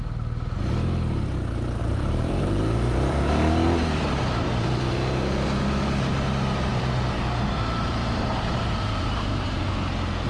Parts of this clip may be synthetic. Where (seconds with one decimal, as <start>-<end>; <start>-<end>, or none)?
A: 1.8-4.8; 6.7-9.7